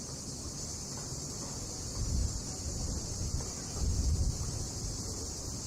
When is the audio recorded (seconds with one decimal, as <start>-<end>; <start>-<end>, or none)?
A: 0.0-0.7; 1.3-2.2; 3.6-5.7